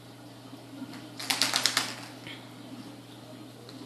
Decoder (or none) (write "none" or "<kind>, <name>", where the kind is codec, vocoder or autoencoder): none